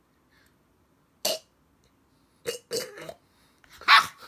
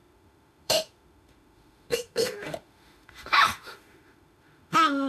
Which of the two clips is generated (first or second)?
second